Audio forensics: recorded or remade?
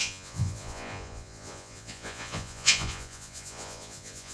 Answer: remade